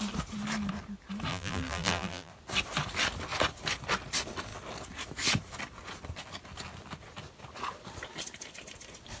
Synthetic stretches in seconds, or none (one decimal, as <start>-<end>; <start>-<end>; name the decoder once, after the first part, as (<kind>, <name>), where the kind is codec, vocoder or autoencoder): 1.3-2.3 (vocoder, BigVGAN v2)